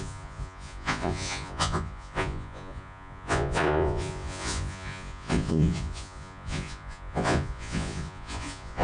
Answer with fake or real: fake